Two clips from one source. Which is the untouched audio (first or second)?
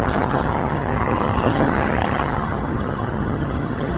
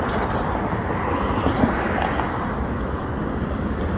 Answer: second